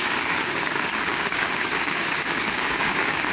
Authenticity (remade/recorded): remade